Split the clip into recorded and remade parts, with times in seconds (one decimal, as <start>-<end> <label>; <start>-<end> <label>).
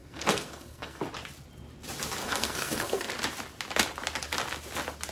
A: 0.0-1.0 remade; 1.0-2.2 recorded; 2.2-3.1 remade; 3.1-5.1 recorded